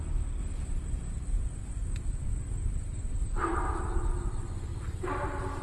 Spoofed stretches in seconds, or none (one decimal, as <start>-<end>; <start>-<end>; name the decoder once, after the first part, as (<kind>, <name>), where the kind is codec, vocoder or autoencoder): 0.4-3.8 (vocoder, BigVGAN v2); 4.7-5.6